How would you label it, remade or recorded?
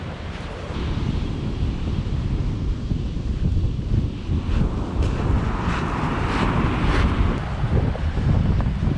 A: recorded